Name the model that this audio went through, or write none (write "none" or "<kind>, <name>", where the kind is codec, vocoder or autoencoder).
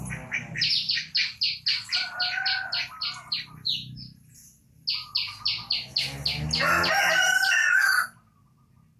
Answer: none